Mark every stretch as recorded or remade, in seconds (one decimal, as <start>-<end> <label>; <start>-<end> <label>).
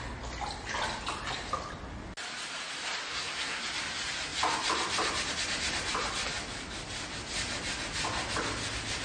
0.0-3.1 recorded; 3.1-3.6 remade; 3.6-9.0 recorded